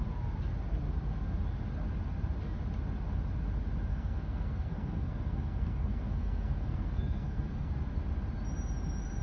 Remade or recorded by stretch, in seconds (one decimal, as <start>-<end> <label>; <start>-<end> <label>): 0.0-3.9 recorded; 3.9-7.7 remade; 7.7-9.2 recorded